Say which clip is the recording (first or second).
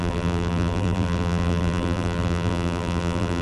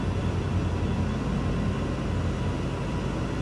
second